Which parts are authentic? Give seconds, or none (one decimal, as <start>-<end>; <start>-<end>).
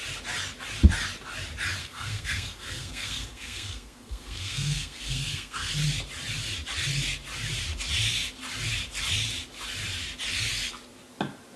0.0-1.8; 5.7-11.6